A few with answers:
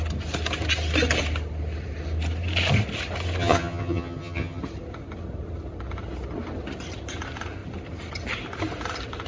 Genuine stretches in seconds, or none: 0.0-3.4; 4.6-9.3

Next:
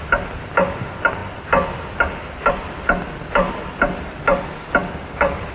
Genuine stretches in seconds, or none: 0.0-5.5

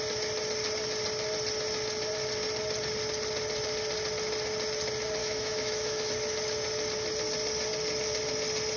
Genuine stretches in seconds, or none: 0.0-5.2; 6.1-8.8